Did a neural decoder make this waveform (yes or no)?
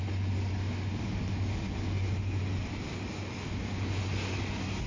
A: no